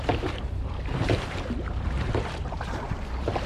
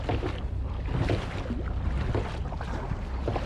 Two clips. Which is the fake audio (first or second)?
first